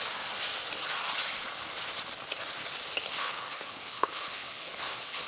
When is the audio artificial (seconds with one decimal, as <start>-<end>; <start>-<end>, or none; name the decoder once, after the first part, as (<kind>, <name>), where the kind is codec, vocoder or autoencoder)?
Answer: 3.2-5.3 (codec, HILCodec)